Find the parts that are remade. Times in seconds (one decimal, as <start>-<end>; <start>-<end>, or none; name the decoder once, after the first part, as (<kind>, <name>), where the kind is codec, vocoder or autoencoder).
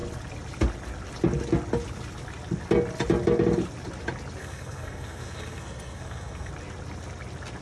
4.4-6.5 (codec, SNAC)